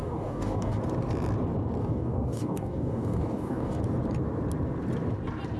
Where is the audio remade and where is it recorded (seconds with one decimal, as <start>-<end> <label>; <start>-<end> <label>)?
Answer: 0.0-0.8 remade; 0.8-1.8 recorded; 1.8-3.8 remade; 3.8-5.6 recorded